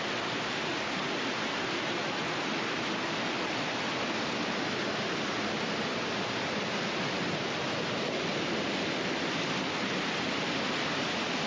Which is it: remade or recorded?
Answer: recorded